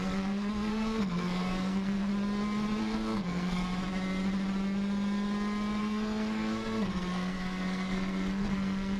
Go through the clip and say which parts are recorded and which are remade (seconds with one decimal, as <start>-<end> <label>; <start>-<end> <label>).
0.0-2.1 remade; 2.1-2.8 recorded; 2.8-3.6 remade; 3.6-5.8 recorded; 5.8-9.0 remade